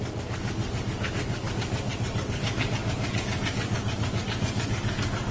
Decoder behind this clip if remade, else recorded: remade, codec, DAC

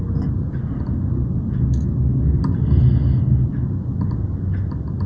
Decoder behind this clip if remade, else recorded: recorded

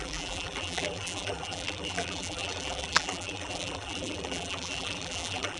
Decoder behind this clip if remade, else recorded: remade, vocoder, BigVGAN v2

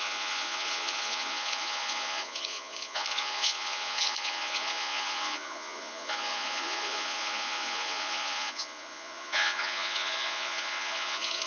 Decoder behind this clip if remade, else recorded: remade, vocoder, Vocos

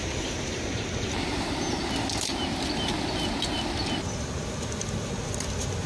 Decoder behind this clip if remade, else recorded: recorded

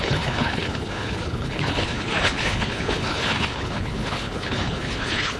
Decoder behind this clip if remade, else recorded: remade, codec, HILCodec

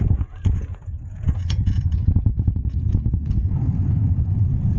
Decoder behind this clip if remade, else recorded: remade, vocoder, Vocos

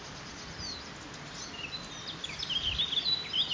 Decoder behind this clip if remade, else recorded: recorded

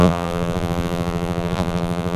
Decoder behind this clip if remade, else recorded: remade, vocoder, BigVGAN v2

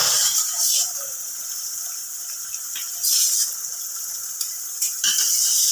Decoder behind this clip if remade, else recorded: remade, vocoder, BigVGAN v2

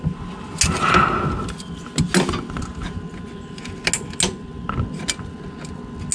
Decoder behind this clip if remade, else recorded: recorded